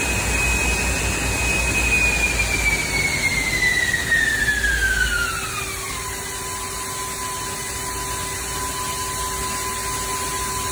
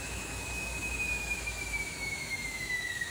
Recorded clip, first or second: first